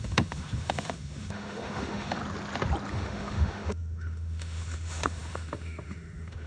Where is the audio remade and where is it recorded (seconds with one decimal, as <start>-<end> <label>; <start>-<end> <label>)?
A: 0.0-2.2 remade; 2.2-2.9 recorded; 2.9-6.5 remade